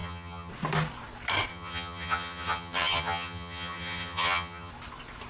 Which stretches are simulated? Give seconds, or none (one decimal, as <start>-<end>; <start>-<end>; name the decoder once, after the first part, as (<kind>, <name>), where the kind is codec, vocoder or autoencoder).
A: 0.0-0.5 (vocoder, HiFi-GAN); 1.5-4.7